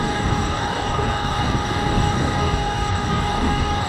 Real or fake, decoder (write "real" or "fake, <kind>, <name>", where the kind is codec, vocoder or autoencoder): fake, codec, DAC